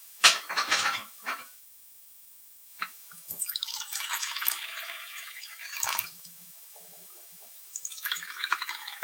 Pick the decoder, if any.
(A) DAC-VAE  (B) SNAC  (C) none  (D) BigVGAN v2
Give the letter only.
A